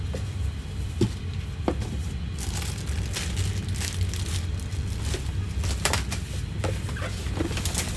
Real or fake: real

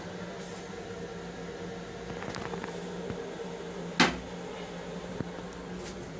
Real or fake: real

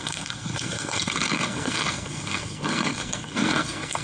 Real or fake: fake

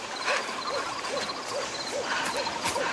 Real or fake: real